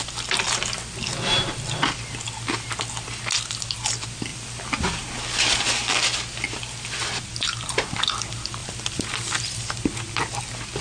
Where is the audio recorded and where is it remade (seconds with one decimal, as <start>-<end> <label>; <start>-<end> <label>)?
0.0-4.3 recorded; 4.3-5.1 remade; 5.1-8.6 recorded; 8.6-10.4 remade; 10.4-10.8 recorded